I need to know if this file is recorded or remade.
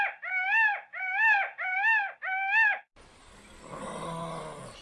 recorded